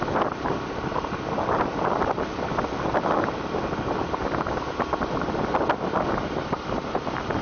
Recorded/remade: recorded